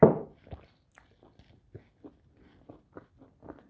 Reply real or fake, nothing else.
real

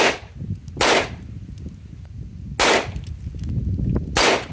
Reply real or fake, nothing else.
real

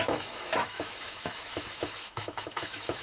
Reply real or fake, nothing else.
fake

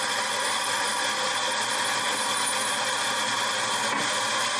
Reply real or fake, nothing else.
real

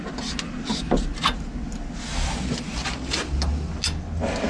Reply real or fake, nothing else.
real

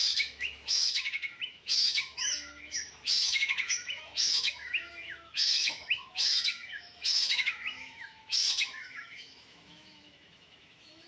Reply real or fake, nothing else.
fake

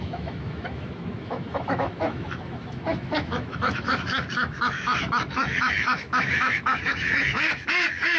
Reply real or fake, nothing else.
fake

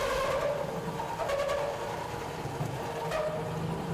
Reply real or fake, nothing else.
real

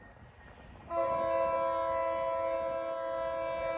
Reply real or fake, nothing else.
real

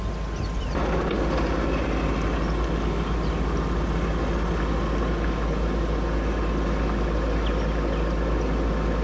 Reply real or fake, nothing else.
real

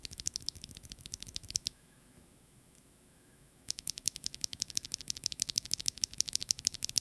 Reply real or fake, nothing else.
fake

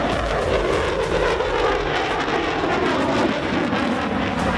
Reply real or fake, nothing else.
real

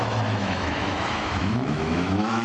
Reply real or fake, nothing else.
fake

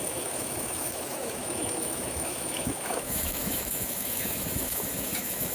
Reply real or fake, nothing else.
fake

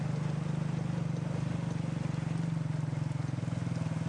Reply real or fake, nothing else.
real